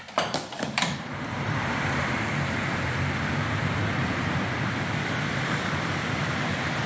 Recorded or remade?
remade